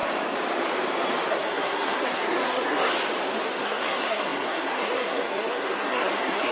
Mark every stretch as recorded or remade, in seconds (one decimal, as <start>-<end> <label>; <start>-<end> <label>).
0.0-1.3 recorded; 1.3-2.9 remade; 2.9-3.6 recorded; 3.6-6.5 remade